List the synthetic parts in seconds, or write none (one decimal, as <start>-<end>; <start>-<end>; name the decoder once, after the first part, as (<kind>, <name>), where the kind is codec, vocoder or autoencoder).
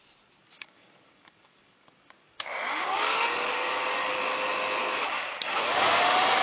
0.4-4.2 (codec, DAC); 4.8-5.7